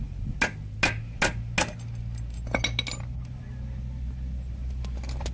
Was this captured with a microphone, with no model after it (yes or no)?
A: yes